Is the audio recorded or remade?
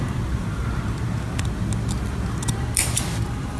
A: recorded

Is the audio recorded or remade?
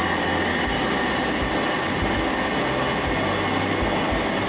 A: recorded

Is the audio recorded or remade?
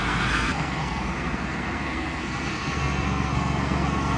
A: remade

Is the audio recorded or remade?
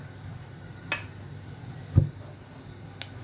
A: recorded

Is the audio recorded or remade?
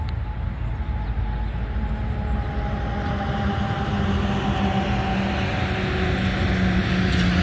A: recorded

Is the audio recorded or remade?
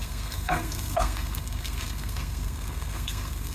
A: remade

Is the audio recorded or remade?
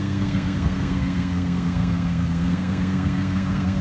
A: remade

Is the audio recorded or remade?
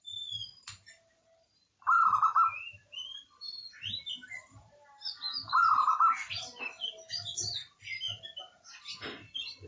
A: recorded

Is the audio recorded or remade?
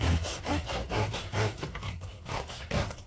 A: remade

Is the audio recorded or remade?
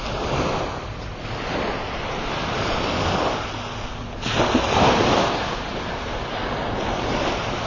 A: recorded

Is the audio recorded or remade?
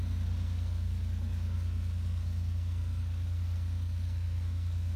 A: remade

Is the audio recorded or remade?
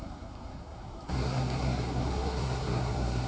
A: remade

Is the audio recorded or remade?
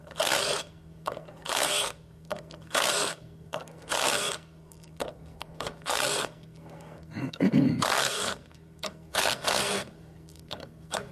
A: remade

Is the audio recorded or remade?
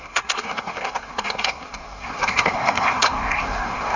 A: remade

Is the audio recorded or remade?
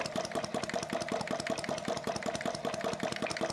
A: recorded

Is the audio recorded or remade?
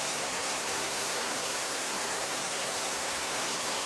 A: remade